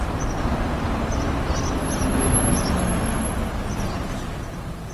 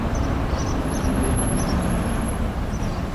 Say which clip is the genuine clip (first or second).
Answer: first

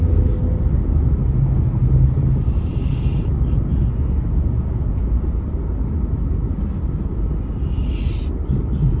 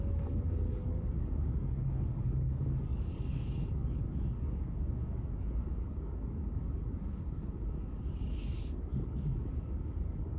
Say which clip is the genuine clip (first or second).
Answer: first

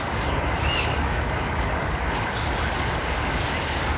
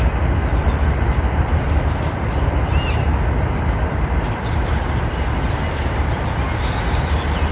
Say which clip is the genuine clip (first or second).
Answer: second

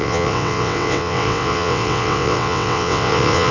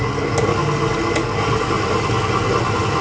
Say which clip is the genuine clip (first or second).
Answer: second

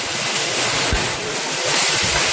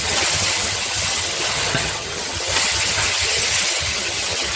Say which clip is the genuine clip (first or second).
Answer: first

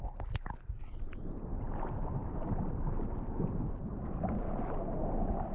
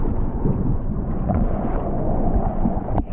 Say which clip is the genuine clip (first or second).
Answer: first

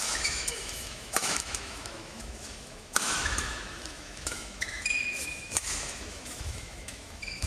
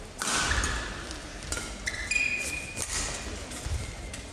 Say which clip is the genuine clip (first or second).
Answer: second